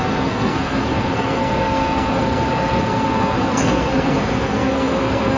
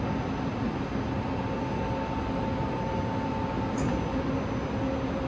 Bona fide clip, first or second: second